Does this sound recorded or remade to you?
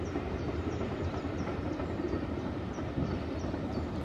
remade